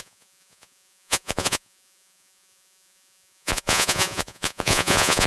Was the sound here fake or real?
fake